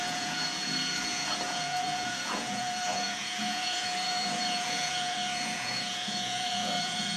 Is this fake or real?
fake